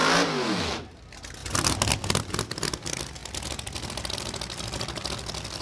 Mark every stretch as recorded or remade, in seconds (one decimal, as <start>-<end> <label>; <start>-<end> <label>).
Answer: 0.0-5.6 recorded